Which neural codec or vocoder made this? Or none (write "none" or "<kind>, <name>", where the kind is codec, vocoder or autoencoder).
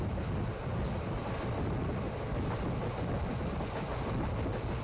none